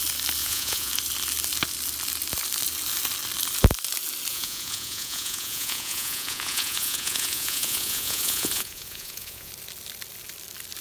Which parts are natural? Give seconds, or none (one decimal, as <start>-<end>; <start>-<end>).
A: 0.0-0.4; 0.9-4.3; 9.5-10.8